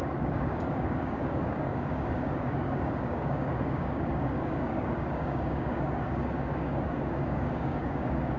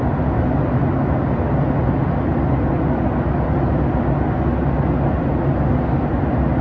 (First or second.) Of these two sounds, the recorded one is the second